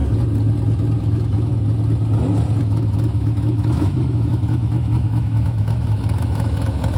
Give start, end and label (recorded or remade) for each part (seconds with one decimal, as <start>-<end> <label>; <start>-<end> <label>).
0.0-1.0 recorded; 1.0-1.5 remade; 1.5-2.6 recorded; 2.6-7.0 remade